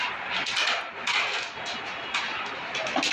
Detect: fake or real real